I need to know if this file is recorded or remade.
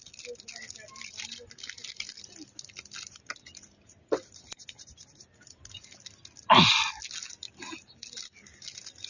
recorded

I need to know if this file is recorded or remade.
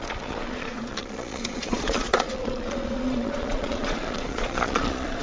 remade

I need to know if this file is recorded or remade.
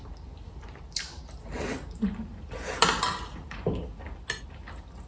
recorded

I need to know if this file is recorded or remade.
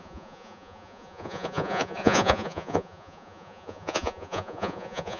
remade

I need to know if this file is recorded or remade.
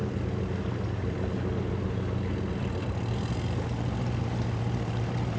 recorded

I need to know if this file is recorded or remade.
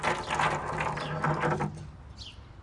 recorded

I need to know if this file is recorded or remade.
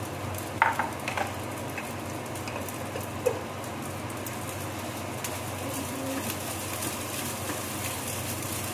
recorded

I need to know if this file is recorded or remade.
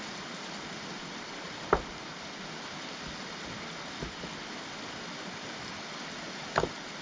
recorded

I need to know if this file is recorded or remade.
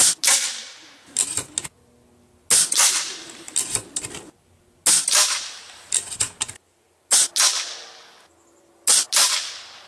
recorded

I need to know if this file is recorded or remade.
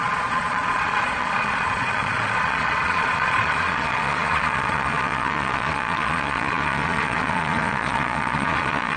remade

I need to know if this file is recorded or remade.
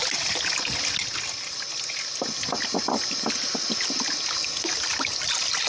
recorded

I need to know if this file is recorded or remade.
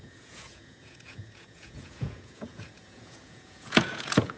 remade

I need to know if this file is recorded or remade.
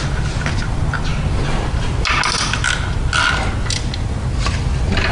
recorded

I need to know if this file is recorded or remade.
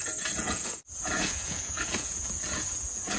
remade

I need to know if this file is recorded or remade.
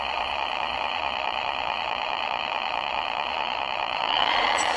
remade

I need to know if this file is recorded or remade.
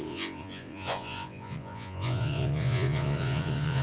remade